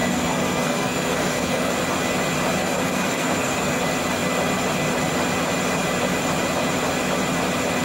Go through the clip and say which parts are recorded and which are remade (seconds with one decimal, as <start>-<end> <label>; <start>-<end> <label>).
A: 0.0-1.7 remade; 1.7-2.6 recorded; 2.6-3.8 remade; 3.8-7.8 recorded